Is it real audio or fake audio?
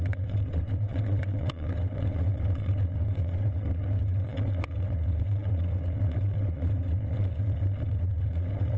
fake